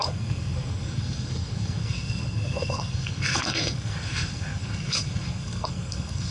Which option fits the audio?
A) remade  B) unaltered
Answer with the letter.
A